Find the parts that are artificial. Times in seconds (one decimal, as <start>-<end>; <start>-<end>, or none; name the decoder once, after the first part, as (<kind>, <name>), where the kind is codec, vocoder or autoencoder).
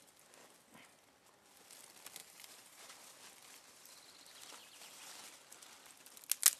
2.2-2.8 (vocoder, BigVGAN v2); 4.6-5.1